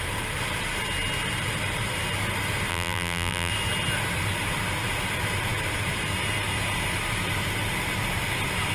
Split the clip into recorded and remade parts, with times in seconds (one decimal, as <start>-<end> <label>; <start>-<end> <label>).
0.0-2.7 recorded; 2.7-3.5 remade; 3.5-8.7 recorded